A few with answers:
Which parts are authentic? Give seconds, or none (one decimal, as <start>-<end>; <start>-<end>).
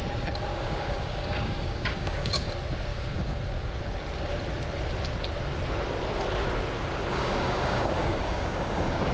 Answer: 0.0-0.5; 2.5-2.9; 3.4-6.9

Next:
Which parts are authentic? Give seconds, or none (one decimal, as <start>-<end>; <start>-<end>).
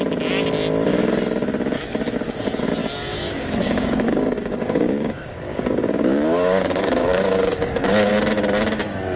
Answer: 0.0-3.1; 8.1-9.2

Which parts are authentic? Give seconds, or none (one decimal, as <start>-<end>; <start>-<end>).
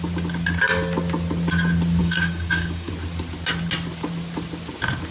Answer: 0.0-2.0; 2.9-5.1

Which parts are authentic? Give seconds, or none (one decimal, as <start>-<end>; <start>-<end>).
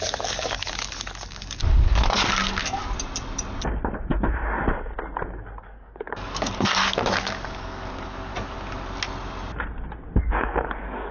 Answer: 2.8-5.6; 8.3-10.2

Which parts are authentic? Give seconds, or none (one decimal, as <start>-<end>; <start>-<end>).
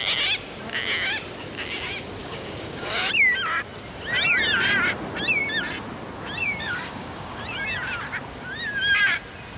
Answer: 0.0-2.2; 3.1-6.4; 7.4-9.6